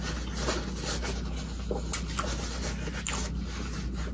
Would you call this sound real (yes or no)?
yes